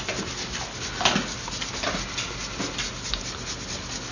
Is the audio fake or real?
real